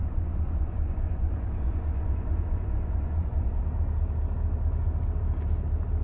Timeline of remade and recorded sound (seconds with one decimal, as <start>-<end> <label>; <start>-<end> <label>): 0.0-3.6 remade; 3.6-6.0 recorded